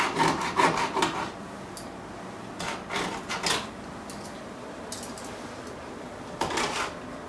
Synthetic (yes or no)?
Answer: no